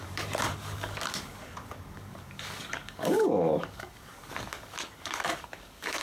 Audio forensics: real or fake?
fake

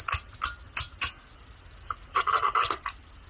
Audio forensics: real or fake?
real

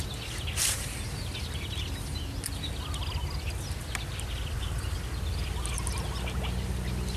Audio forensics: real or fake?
real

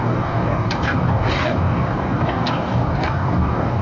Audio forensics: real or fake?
fake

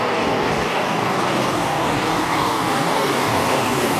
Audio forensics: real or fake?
fake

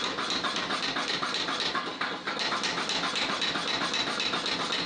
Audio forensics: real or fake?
real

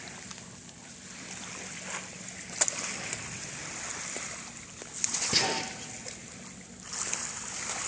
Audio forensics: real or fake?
real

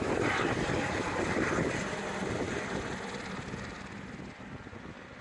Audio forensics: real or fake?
real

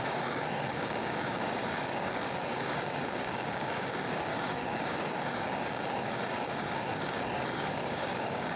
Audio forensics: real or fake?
fake